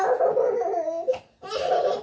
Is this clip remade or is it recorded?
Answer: recorded